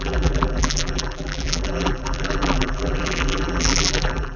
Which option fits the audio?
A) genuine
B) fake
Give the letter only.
B